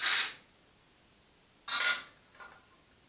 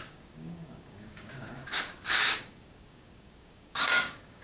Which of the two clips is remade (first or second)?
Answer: second